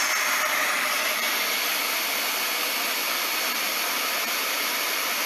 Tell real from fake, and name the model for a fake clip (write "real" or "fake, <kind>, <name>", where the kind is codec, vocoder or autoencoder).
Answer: fake, vocoder, BigVGAN v2